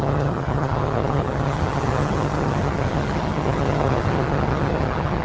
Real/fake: fake